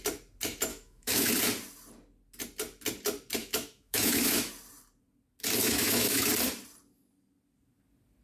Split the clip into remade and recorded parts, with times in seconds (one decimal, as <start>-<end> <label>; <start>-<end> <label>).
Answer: 0.0-0.7 recorded; 0.7-1.3 remade; 1.3-3.4 recorded; 3.4-4.5 remade; 4.5-5.6 recorded; 5.6-6.3 remade; 6.3-8.2 recorded